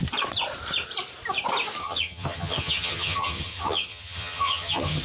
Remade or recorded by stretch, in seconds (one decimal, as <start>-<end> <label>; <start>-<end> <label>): 0.0-1.8 recorded; 1.8-5.0 remade